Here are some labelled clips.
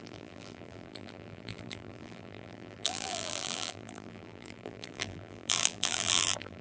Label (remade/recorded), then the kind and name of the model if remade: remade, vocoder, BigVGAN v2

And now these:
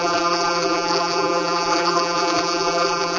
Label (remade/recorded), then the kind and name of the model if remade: remade, vocoder, BigVGAN v2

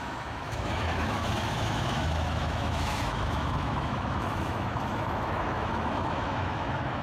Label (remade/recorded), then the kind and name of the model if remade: remade, autoencoder, DAC-VAE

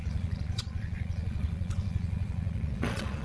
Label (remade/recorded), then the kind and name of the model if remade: remade, vocoder, Vocos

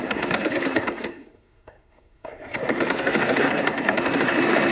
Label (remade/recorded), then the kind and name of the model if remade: remade, codec, SNAC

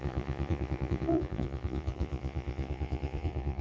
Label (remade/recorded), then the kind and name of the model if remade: remade, vocoder, Vocos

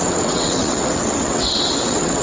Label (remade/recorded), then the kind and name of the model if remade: remade, vocoder, WaveNeXt